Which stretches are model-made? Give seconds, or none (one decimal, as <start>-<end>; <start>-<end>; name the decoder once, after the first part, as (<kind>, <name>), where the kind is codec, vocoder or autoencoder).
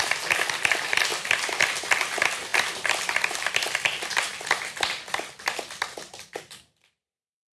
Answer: 1.1-1.7 (vocoder, BigVGAN v2); 2.5-3.6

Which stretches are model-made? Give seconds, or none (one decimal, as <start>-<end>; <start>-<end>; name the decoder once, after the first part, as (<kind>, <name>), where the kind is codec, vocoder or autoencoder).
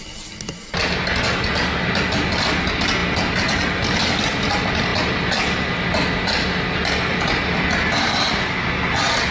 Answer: none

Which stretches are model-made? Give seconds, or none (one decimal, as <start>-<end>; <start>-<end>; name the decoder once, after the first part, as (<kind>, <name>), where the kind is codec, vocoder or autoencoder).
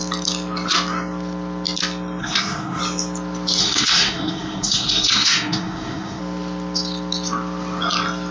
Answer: 2.2-2.8 (codec, SNAC); 3.6-6.2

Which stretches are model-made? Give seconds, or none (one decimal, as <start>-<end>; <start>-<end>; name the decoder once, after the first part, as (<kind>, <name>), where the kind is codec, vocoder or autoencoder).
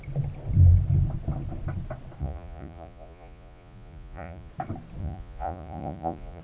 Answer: 2.2-4.5 (vocoder, Vocos); 5.0-6.4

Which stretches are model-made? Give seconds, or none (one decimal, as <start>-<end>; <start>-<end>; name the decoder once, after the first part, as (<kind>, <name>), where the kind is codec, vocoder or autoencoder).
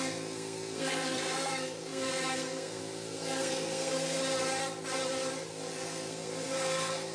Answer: 0.0-4.2 (codec, SNAC); 5.5-7.1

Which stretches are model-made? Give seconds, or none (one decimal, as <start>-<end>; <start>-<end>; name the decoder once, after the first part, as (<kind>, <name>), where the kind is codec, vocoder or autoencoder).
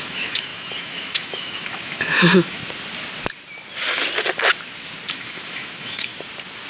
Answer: 0.0-2.6 (autoencoder, DAC-VAE); 5.1-6.1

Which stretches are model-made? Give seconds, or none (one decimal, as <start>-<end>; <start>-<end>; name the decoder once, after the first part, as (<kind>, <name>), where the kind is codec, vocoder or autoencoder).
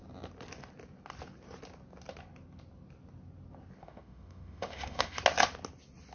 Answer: 3.8-5.2 (autoencoder, DAC-VAE)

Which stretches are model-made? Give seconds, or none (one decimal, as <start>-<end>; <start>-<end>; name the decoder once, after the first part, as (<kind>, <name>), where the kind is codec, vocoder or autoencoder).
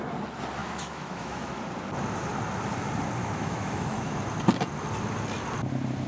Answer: 0.6-1.6 (autoencoder, DAC-VAE); 3.2-4.2